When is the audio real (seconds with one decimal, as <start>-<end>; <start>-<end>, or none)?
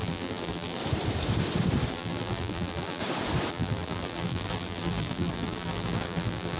0.8-1.9; 3.0-3.5